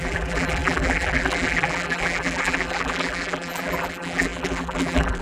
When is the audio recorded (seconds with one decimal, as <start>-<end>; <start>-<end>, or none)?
none